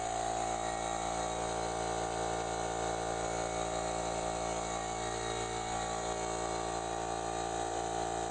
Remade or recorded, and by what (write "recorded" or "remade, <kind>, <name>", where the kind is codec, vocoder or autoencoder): recorded